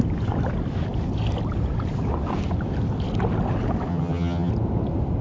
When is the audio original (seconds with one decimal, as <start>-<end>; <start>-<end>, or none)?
0.0-3.9; 4.5-5.2